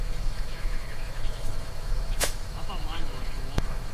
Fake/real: fake